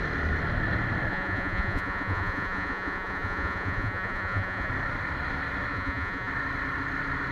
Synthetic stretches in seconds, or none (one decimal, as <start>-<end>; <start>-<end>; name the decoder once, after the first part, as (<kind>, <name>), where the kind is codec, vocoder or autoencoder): 1.1-4.7 (vocoder, Vocos); 5.7-6.3